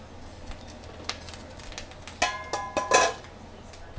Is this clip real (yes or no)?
yes